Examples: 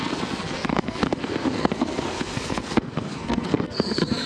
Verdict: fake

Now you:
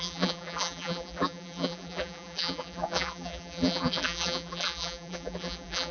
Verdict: fake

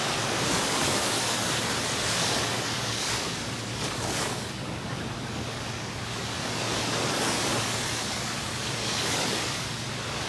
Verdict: fake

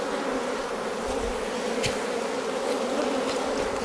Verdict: real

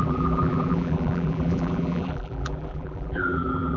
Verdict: fake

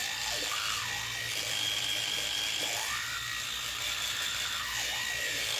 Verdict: real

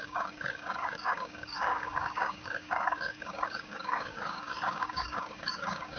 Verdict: fake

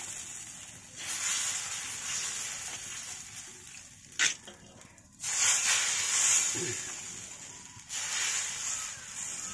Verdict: real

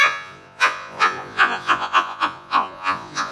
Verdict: fake